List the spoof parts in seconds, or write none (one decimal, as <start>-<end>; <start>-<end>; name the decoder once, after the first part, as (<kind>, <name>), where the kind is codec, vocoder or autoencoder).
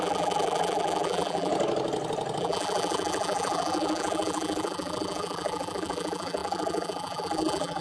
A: 0.0-1.5 (vocoder, BigVGAN v2); 2.4-7.8